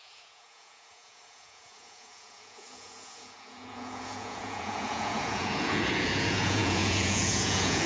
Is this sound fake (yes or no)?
yes